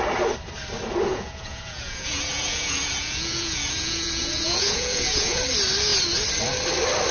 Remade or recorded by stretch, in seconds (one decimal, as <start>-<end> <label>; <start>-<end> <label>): 0.0-1.1 recorded; 1.1-5.4 remade; 5.4-7.1 recorded